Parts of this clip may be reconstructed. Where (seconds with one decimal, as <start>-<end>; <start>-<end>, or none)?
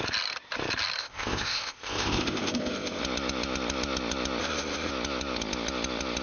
1.0-3.0; 4.4-4.9